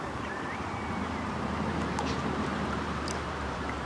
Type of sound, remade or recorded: remade